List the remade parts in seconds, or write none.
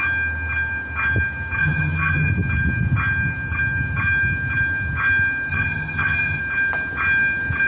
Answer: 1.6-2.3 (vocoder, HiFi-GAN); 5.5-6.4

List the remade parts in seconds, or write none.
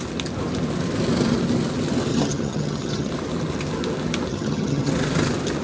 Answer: 2.1-3.1 (vocoder, HiFi-GAN); 4.3-4.9